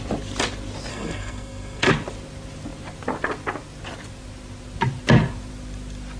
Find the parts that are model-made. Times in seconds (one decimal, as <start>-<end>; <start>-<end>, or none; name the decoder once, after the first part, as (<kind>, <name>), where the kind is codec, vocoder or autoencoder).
0.9-1.9 (codec, SNAC)